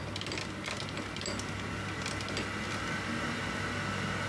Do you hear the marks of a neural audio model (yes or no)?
no